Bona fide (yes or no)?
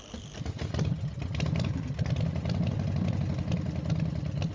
yes